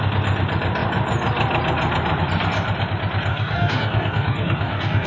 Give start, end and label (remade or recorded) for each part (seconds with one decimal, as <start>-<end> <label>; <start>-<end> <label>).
0.0-3.3 recorded; 3.3-5.1 remade